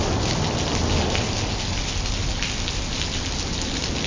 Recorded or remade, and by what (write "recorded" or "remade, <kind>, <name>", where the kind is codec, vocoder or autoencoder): recorded